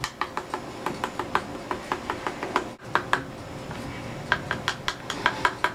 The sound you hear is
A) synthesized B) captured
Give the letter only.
B